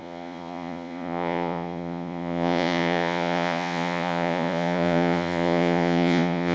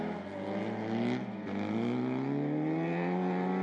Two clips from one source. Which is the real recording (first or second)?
second